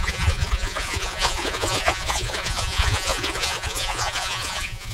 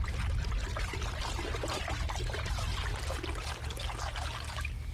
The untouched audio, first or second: second